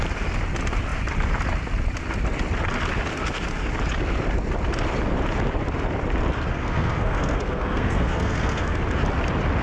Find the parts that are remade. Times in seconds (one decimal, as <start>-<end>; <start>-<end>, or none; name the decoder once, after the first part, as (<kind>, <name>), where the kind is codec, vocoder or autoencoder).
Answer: 6.5-8.8 (codec, SNAC)